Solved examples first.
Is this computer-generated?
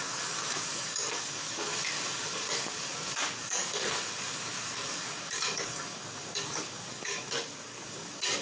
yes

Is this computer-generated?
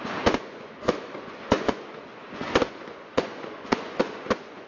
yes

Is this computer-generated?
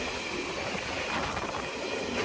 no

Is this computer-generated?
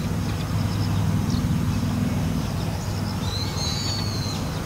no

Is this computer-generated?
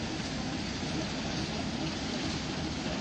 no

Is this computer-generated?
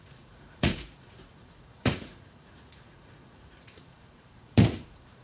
yes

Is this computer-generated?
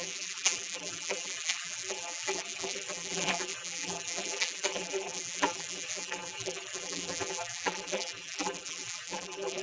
yes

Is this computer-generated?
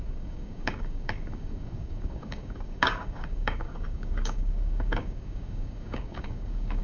yes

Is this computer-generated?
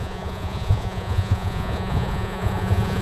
yes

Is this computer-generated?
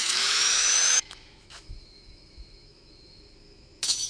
yes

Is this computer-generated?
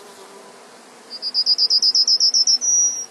no